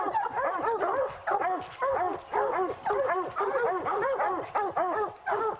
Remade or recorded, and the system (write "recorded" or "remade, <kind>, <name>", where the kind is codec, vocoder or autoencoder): recorded